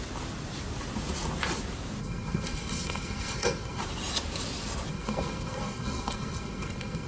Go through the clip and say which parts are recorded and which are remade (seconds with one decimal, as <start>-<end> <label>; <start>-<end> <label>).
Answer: 0.0-2.0 recorded; 2.0-3.8 remade; 3.8-4.9 recorded; 4.9-7.1 remade